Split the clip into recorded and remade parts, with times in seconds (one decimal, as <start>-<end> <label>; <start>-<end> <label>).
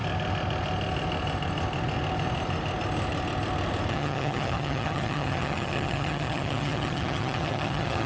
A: 0.0-3.9 recorded; 3.9-8.1 remade